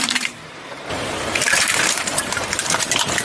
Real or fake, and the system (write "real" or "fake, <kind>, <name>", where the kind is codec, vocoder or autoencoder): fake, vocoder, BigVGAN v2